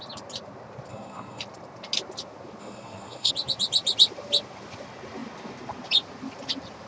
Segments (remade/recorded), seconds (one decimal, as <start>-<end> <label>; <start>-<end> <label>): 0.0-0.9 recorded; 0.9-1.4 remade; 1.4-2.6 recorded; 2.6-3.3 remade; 3.3-6.9 recorded